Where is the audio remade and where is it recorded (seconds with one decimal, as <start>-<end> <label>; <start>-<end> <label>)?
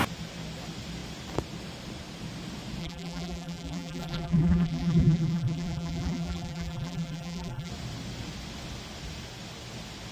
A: 0.0-2.8 recorded; 2.8-7.7 remade; 7.7-10.1 recorded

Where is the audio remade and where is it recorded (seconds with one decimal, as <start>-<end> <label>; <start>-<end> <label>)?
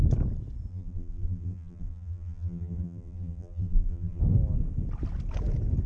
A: 0.0-0.7 recorded; 0.7-4.2 remade; 4.2-5.9 recorded